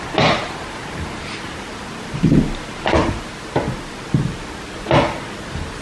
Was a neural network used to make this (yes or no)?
no